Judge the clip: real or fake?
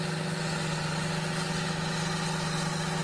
real